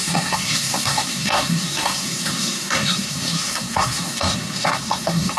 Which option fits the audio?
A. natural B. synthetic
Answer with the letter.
B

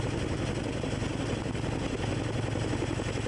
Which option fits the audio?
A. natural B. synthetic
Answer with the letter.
A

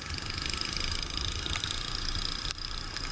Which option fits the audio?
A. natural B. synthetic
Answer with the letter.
A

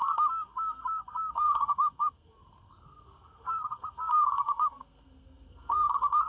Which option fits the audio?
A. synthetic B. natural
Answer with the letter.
A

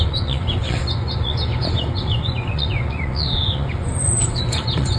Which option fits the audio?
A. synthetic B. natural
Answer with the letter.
A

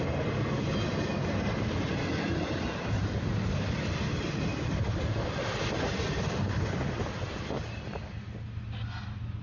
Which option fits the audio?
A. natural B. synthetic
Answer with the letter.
A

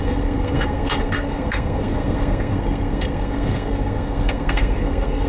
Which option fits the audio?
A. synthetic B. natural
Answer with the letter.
A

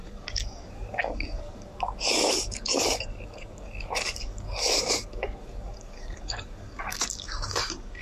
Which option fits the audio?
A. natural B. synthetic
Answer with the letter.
B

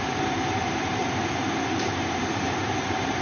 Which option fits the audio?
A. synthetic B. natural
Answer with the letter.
A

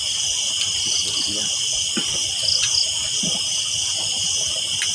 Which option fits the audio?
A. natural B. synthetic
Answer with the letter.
A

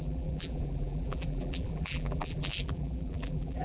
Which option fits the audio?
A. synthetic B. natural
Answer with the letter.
A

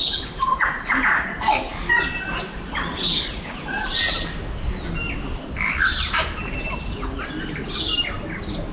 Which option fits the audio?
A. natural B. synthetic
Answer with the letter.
A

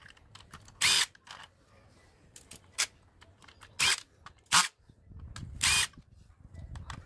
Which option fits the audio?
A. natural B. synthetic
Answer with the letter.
A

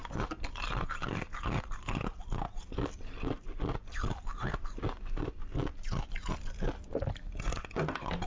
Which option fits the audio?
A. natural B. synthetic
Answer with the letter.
A